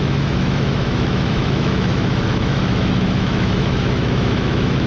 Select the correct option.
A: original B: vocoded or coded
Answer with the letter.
B